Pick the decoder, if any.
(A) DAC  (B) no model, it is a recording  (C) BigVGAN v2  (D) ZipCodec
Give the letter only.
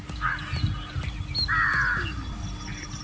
C